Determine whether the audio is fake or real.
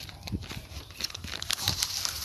fake